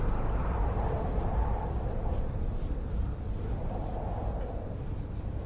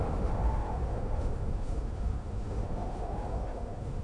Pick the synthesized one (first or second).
second